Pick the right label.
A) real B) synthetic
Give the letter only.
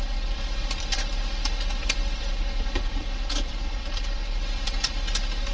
B